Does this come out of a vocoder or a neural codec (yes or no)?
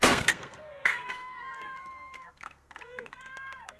yes